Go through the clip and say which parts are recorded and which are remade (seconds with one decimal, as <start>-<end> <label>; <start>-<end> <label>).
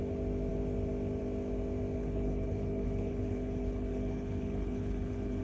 0.0-2.0 recorded; 2.0-5.4 remade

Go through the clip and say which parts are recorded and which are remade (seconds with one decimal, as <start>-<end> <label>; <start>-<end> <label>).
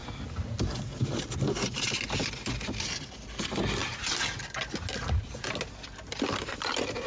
0.0-7.1 recorded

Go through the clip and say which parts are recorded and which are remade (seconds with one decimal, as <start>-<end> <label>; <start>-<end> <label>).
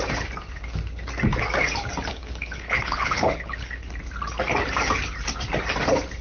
0.0-2.1 recorded; 2.1-3.9 remade; 3.9-6.2 recorded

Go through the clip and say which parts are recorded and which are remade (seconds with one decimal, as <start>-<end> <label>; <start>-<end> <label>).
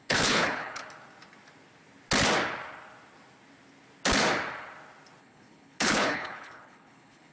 0.0-0.8 remade; 0.8-5.2 recorded; 5.2-7.3 remade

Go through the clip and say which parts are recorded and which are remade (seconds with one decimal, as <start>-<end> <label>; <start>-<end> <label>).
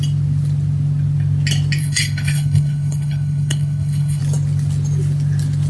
0.0-1.8 recorded; 1.8-4.2 remade; 4.2-5.7 recorded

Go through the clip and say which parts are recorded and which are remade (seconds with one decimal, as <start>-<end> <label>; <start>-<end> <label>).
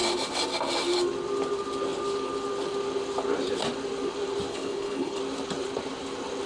0.0-4.5 recorded; 4.5-5.2 remade; 5.2-6.5 recorded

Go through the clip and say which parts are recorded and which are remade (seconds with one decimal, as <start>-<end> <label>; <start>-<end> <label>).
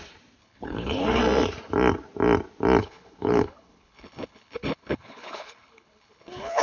0.0-0.4 recorded; 0.4-1.2 remade; 1.2-2.8 recorded; 2.8-6.6 remade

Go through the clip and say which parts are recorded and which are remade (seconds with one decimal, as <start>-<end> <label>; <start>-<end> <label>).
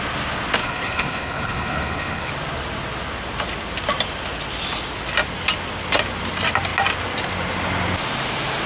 0.0-0.6 recorded; 0.6-2.3 remade; 2.3-8.7 recorded